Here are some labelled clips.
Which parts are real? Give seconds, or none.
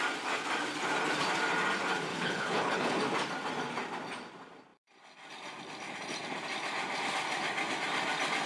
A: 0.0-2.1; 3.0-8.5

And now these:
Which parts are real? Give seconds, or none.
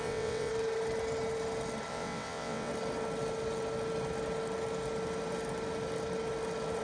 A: 0.5-1.9; 2.7-6.8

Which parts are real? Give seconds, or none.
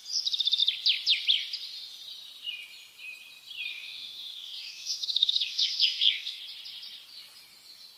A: 0.0-3.7; 6.4-8.0